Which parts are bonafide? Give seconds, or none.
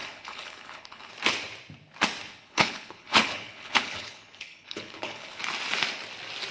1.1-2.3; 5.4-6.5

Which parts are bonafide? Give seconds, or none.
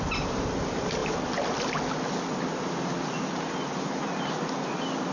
0.0-5.1